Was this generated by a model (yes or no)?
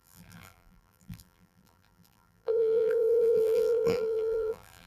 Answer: yes